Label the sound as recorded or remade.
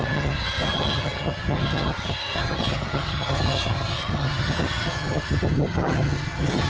remade